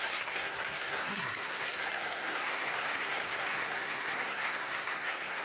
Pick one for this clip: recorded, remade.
remade